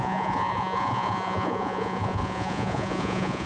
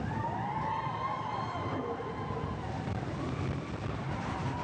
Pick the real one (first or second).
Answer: second